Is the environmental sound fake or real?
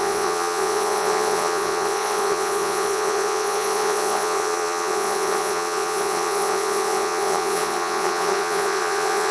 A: fake